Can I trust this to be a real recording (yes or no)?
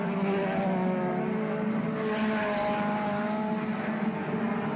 yes